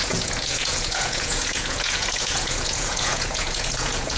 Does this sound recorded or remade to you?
remade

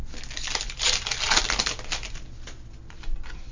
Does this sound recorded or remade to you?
recorded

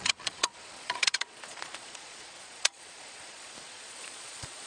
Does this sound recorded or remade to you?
remade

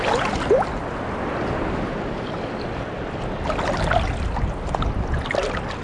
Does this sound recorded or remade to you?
recorded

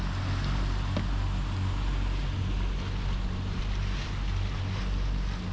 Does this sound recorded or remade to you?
recorded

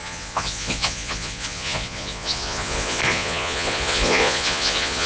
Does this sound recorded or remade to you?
remade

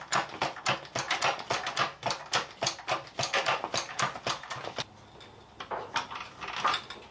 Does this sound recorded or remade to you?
recorded